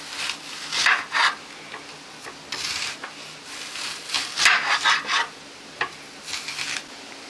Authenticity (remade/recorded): recorded